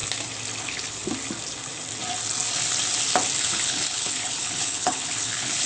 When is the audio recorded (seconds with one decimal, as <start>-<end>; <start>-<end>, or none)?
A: 0.0-0.6; 1.0-3.4